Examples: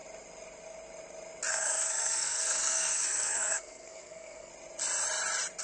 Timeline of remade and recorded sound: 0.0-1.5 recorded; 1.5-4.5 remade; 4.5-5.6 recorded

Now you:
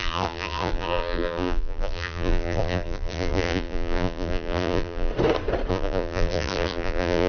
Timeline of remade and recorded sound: 0.0-5.1 remade; 5.1-5.7 recorded; 5.7-7.3 remade

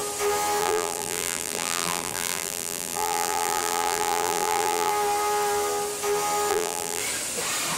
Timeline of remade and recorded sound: 0.0-0.6 recorded; 0.6-4.9 remade; 4.9-6.5 recorded; 6.5-7.0 remade; 7.0-7.8 recorded

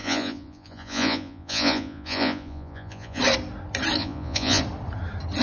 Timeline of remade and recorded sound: 0.0-3.2 remade; 3.2-4.0 recorded; 4.0-4.6 remade; 4.6-5.4 recorded

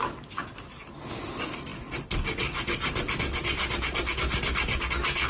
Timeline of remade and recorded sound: 0.0-5.3 recorded